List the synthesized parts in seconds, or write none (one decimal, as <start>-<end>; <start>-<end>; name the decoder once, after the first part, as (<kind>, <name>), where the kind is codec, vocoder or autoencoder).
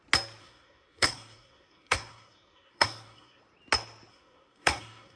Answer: 0.4-3.4 (codec, SNAC); 4.1-5.2